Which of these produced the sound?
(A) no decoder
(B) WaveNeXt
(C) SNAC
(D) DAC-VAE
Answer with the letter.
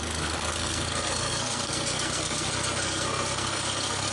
C